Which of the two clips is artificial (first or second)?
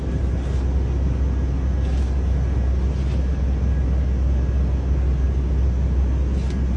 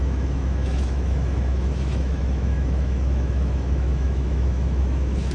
second